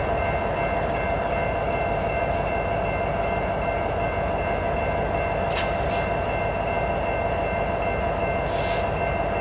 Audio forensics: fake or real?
real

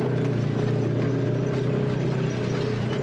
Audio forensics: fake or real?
real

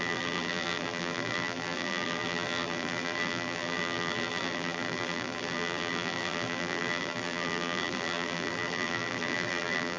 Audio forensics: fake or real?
fake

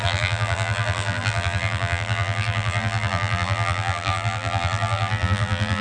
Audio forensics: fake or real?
fake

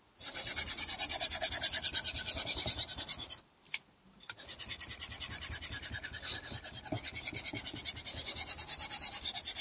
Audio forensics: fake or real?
real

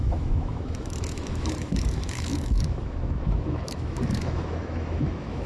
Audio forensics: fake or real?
fake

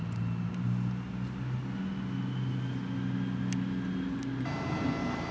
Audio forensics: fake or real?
real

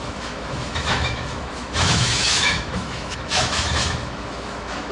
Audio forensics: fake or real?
fake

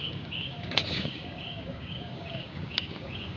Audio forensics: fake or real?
fake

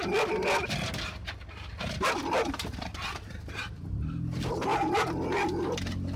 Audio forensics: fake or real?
real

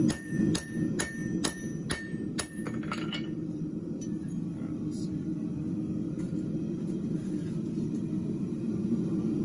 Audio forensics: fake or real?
fake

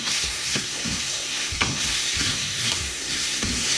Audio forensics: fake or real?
fake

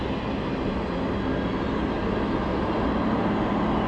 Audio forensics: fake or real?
real